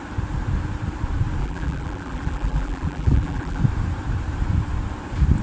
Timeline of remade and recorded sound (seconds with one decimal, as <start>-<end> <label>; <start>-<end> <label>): 0.0-1.4 recorded; 1.4-3.6 remade; 3.6-5.4 recorded